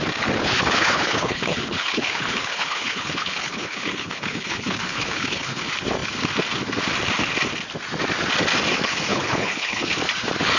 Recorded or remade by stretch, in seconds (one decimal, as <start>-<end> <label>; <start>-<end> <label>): 0.0-0.4 recorded; 0.4-5.6 remade; 5.6-9.1 recorded; 9.1-10.0 remade; 10.0-10.6 recorded